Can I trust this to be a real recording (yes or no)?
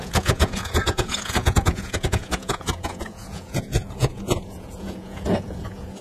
no